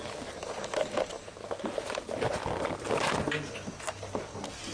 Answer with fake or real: real